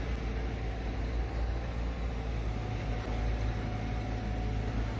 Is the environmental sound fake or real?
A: real